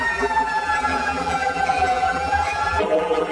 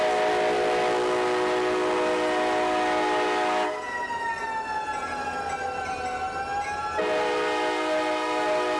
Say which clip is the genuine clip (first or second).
second